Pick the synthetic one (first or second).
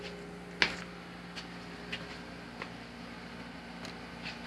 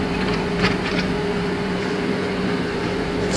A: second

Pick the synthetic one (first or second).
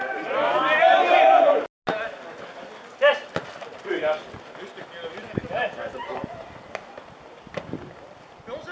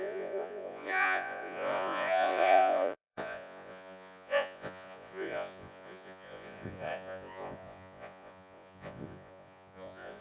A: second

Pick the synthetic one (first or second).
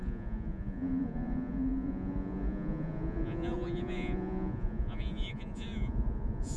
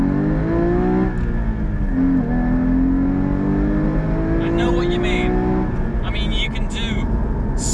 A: first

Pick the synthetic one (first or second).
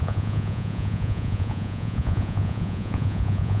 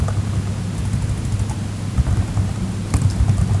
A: first